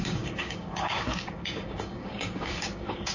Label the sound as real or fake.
fake